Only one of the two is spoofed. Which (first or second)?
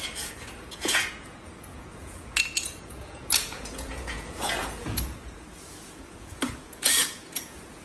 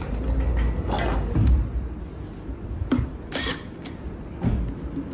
first